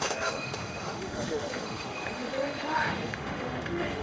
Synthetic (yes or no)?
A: yes